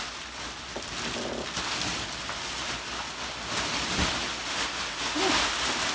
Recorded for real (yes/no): yes